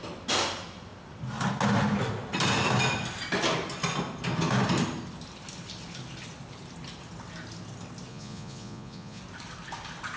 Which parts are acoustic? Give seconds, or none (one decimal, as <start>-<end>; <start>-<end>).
0.0-8.1; 9.2-10.2